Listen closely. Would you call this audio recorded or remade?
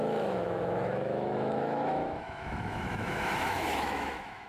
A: remade